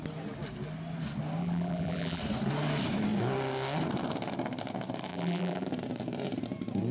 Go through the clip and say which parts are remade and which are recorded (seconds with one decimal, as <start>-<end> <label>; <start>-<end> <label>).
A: 0.0-1.4 recorded; 1.4-2.2 remade; 2.2-5.1 recorded; 5.1-5.7 remade; 5.7-6.9 recorded